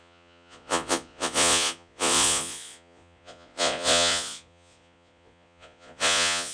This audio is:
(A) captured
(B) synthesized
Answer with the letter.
B